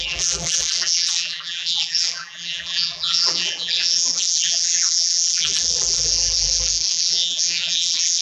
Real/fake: fake